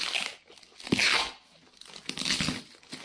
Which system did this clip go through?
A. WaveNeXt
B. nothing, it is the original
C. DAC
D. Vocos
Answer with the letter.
B